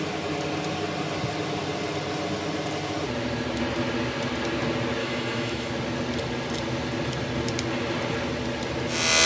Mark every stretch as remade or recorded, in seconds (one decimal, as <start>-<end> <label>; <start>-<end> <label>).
0.0-5.0 recorded; 5.0-5.7 remade; 5.7-9.3 recorded